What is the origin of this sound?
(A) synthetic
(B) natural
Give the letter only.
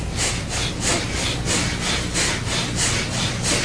B